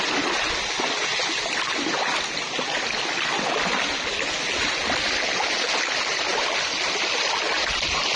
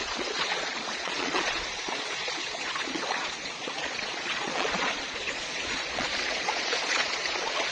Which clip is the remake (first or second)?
second